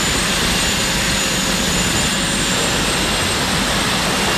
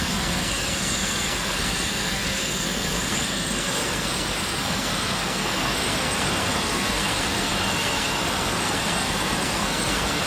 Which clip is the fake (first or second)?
second